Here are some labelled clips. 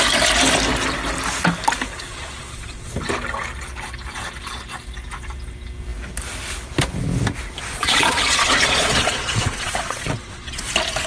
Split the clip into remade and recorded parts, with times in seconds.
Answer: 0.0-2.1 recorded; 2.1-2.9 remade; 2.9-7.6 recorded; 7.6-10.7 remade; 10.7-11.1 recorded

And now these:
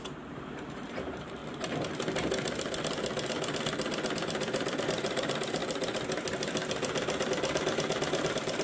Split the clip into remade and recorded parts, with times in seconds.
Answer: 0.0-1.4 remade; 1.4-4.8 recorded; 4.8-5.6 remade; 5.6-7.3 recorded; 7.3-8.6 remade

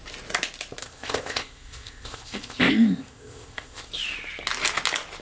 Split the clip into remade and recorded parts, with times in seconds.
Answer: 0.0-0.8 recorded; 0.8-3.9 remade; 3.9-5.2 recorded

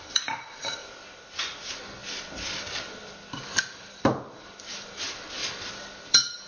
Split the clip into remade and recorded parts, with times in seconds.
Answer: 0.0-0.8 remade; 0.8-1.6 recorded; 1.6-2.0 remade; 2.0-2.6 recorded; 2.6-3.0 remade; 3.0-3.9 recorded; 3.9-5.4 remade; 5.4-6.1 recorded; 6.1-6.5 remade